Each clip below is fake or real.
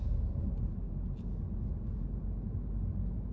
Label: real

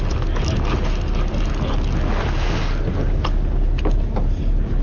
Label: real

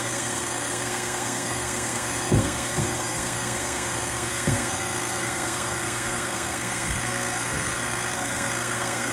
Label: fake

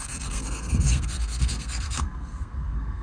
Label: fake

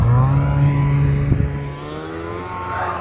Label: real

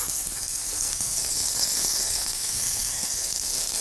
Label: fake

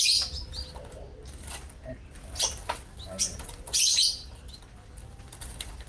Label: real